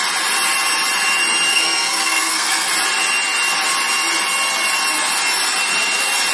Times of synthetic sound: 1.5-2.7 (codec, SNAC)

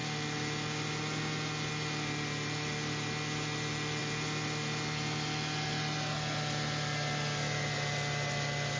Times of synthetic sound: none